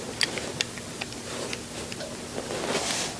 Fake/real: real